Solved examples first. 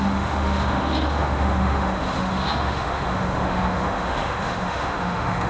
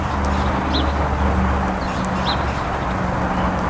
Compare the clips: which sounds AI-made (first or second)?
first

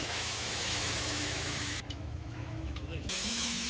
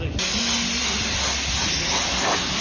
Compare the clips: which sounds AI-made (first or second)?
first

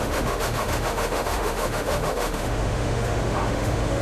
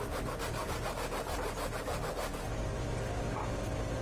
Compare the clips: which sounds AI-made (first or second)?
first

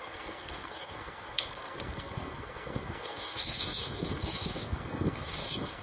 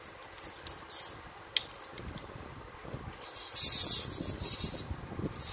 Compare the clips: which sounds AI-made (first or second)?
first